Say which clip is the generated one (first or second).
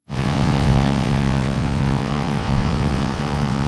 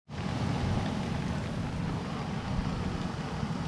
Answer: first